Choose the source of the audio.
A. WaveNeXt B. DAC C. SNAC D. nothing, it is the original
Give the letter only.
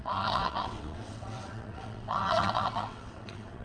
A